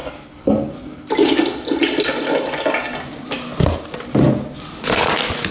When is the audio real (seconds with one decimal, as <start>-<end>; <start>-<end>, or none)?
1.1-5.5